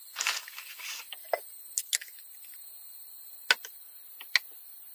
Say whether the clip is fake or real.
real